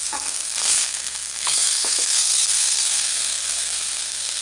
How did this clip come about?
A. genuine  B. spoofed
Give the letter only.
B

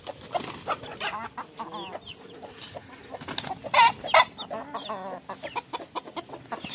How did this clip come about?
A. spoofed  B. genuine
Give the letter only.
B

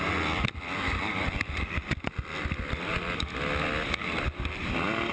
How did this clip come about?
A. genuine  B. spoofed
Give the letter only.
A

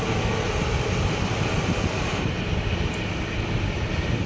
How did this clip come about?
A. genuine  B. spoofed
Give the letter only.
A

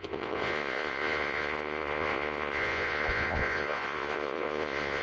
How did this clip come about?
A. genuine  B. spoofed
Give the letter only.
B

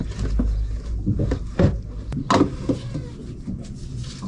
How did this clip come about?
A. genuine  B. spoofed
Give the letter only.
A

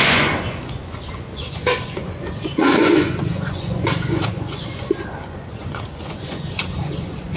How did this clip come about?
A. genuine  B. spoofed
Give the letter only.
B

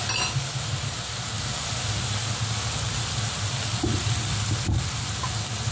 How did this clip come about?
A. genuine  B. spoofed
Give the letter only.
A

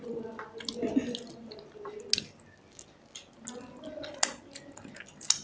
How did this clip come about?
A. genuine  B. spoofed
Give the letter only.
A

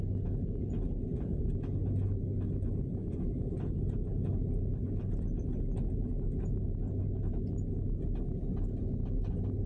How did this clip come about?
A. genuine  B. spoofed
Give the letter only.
A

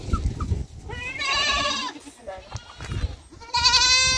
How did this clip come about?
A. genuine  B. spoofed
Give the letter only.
A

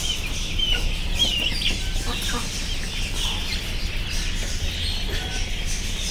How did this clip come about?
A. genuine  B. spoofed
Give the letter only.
A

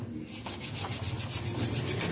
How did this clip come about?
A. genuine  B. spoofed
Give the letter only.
A